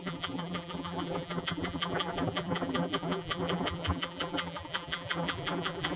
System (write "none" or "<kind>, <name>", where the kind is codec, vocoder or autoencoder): vocoder, BigVGAN v2